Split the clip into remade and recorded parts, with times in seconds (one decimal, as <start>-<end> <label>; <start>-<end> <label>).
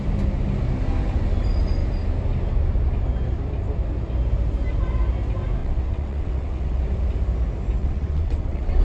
0.0-5.6 recorded; 5.6-6.8 remade; 6.8-7.8 recorded; 7.8-8.8 remade